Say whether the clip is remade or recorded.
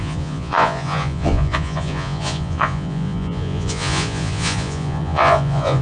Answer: remade